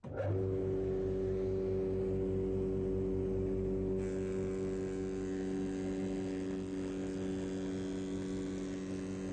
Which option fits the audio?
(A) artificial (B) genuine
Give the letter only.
B